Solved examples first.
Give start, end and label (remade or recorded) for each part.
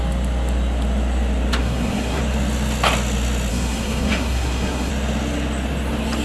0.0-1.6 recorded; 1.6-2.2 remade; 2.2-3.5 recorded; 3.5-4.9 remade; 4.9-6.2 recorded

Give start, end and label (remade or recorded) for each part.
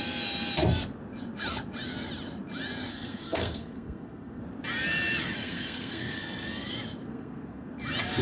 0.0-2.9 recorded; 2.9-4.4 remade; 4.4-5.4 recorded; 5.4-6.2 remade; 6.2-7.0 recorded; 7.0-7.7 remade; 7.7-8.2 recorded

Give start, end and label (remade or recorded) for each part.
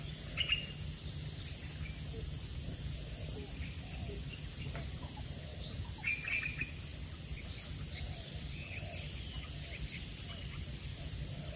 0.0-6.9 recorded; 6.9-11.6 remade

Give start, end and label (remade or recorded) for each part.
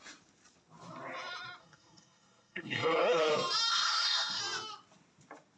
0.0-1.6 recorded; 1.6-3.2 remade; 3.2-3.7 recorded; 3.7-4.4 remade; 4.4-5.6 recorded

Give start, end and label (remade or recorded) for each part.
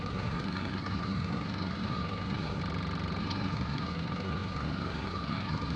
0.0-2.6 remade; 2.6-3.2 recorded; 3.2-5.8 remade